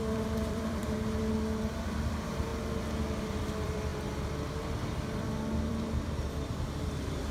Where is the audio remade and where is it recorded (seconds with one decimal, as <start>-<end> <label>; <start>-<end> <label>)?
0.0-0.8 remade; 0.8-1.8 recorded; 1.8-2.5 remade; 2.5-3.4 recorded; 3.4-3.9 remade; 3.9-4.9 recorded; 4.9-7.3 remade